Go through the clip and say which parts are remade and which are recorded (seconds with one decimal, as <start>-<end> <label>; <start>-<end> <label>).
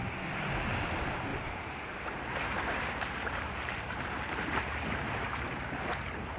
0.0-1.3 recorded; 1.3-5.1 remade; 5.1-6.4 recorded